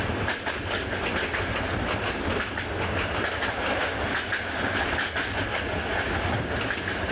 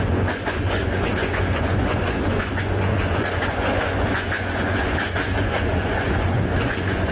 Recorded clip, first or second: first